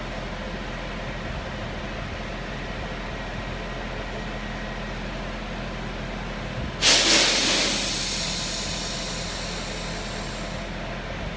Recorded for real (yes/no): yes